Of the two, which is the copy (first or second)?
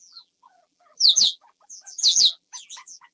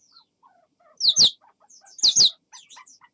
first